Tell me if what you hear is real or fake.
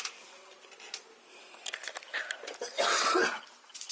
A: real